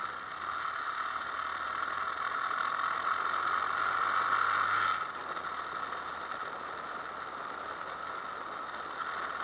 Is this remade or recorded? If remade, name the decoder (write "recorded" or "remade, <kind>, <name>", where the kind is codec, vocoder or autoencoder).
recorded